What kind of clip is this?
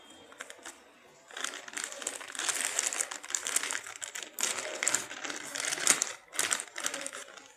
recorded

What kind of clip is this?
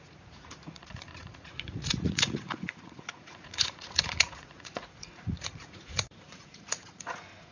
remade